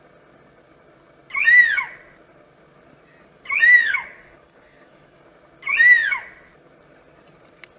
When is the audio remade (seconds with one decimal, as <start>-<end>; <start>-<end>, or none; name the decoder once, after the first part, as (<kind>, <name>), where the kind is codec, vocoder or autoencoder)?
3.8-5.2 (codec, DAC)